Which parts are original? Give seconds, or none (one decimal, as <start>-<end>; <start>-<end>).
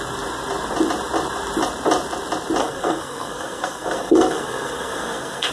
0.0-2.6